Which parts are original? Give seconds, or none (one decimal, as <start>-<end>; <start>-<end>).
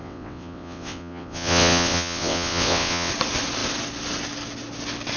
3.1-5.2